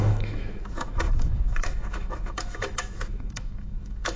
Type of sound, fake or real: fake